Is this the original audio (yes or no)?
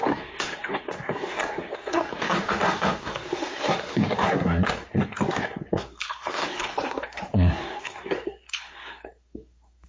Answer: no